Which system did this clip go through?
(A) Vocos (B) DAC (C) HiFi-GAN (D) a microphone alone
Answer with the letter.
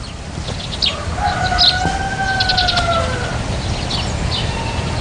D